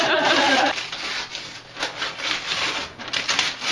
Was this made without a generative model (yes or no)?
yes